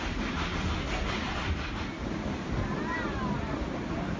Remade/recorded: recorded